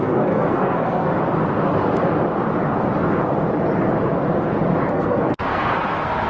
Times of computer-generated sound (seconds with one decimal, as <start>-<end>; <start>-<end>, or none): 0.0-1.1; 4.9-6.3